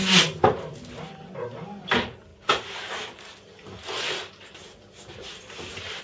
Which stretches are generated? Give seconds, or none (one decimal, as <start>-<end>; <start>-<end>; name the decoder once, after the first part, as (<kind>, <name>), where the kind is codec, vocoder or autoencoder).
none